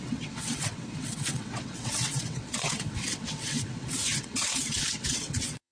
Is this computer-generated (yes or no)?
yes